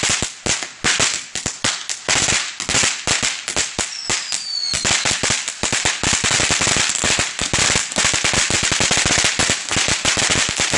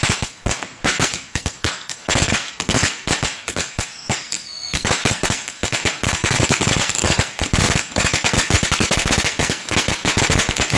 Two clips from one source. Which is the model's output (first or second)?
second